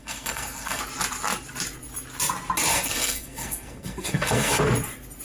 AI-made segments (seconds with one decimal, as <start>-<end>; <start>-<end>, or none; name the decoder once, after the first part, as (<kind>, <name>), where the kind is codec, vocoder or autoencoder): 0.0-0.8 (codec, SNAC); 2.7-4.6